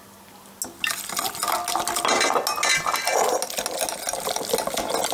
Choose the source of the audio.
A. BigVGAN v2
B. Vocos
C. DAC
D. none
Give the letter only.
D